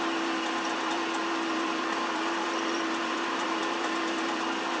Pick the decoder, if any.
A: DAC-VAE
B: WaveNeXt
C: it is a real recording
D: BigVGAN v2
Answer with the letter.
D